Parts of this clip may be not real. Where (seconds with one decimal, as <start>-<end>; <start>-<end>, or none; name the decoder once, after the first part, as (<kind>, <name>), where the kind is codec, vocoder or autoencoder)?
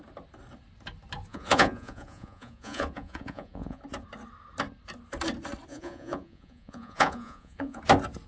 1.3-3.8 (vocoder, Vocos); 5.7-7.8